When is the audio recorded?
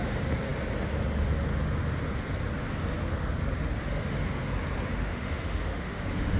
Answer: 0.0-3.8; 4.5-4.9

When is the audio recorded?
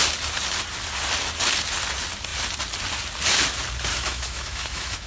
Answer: 0.0-3.9